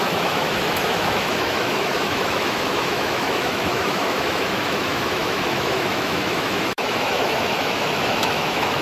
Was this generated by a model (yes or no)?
yes